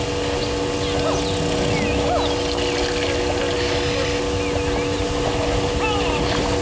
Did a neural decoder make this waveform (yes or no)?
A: no